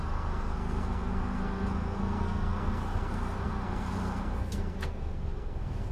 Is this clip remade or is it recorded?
remade